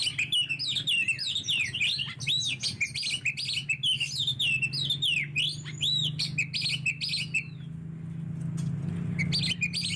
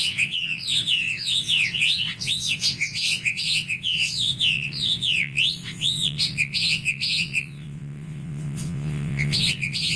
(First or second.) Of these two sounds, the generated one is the second